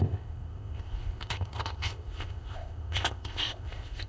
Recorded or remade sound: remade